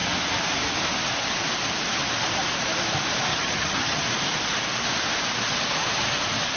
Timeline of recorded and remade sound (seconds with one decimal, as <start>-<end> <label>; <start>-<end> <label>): 0.0-3.3 recorded; 3.3-4.0 remade; 4.0-6.6 recorded